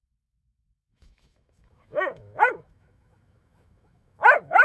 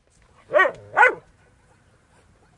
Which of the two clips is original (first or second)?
second